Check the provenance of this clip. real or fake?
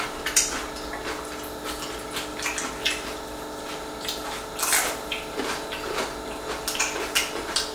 real